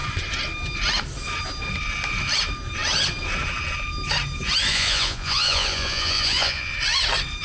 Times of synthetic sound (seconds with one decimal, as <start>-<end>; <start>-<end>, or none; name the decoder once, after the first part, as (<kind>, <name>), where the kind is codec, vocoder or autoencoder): 4.7-6.7 (vocoder, Vocos)